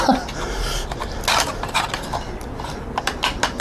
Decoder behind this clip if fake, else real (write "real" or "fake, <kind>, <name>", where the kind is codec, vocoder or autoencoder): real